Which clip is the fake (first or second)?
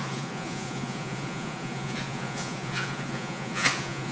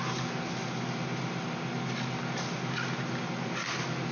first